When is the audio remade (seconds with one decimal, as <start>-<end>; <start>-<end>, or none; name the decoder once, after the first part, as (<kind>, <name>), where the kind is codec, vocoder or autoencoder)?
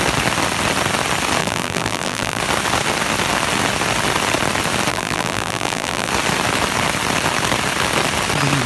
1.4-2.4 (vocoder, BigVGAN v2); 4.9-6.1